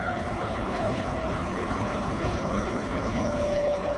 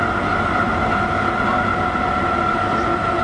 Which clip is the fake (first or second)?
first